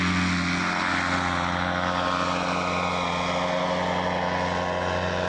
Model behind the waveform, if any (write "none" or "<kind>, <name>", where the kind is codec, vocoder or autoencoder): none